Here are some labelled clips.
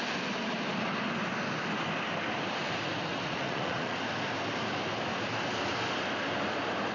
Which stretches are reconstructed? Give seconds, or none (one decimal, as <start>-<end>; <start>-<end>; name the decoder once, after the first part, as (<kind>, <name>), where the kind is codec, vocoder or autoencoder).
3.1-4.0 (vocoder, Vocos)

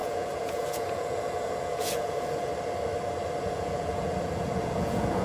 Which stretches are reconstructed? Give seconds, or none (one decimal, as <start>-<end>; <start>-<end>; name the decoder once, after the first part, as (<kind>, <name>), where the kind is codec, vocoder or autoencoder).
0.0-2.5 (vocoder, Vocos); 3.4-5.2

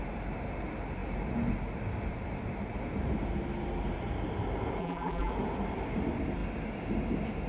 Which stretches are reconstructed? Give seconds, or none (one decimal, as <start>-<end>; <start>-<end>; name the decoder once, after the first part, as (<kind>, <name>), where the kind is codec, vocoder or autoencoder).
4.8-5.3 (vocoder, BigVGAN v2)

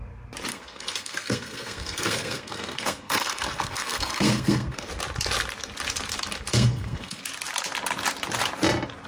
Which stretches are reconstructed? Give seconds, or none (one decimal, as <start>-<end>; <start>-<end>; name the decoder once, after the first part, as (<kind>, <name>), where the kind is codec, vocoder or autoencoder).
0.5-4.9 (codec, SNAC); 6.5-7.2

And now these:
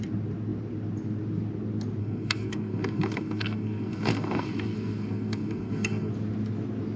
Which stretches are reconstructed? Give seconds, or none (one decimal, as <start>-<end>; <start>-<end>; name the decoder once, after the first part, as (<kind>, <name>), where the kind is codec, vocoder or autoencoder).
2.0-6.1 (codec, SNAC)

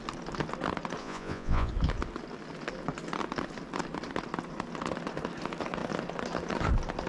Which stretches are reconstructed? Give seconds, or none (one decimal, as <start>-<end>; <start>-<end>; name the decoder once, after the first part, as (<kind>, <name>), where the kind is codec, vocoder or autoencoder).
1.0-1.7 (vocoder, Vocos)